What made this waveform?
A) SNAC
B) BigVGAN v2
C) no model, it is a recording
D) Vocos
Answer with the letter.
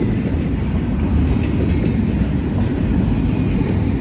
C